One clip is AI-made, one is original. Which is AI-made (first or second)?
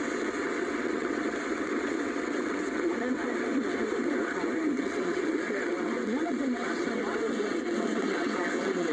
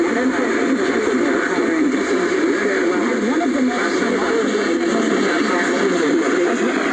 first